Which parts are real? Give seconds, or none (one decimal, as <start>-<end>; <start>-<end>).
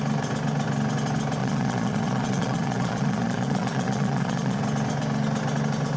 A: 0.0-1.4; 4.6-6.0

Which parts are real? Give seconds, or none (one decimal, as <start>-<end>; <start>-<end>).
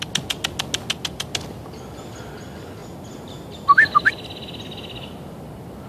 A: 0.0-5.9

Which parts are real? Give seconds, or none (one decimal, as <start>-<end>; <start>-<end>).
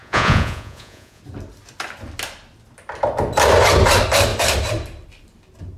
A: 1.2-5.8